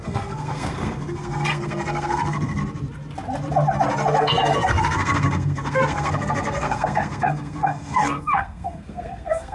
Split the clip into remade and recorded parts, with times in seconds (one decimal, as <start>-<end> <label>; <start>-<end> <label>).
0.0-2.6 remade; 2.6-4.2 recorded; 4.2-9.5 remade